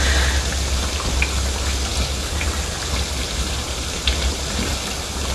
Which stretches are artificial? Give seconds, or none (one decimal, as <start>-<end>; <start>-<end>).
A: none